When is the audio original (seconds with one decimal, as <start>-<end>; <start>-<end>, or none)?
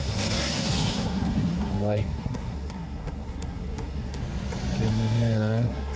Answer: 4.2-4.9